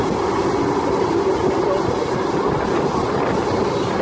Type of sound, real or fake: real